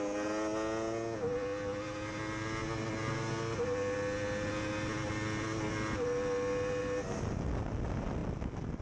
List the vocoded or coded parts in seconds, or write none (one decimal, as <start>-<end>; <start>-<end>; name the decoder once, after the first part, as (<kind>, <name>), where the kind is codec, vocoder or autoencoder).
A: none